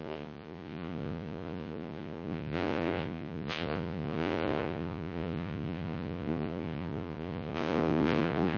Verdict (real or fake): fake